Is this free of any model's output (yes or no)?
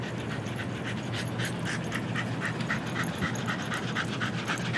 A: yes